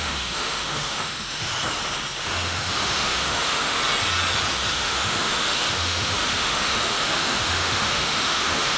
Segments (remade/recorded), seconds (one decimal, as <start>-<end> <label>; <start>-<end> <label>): 0.0-1.5 remade; 1.5-2.2 recorded; 2.2-3.8 remade; 3.8-4.7 recorded; 4.7-8.8 remade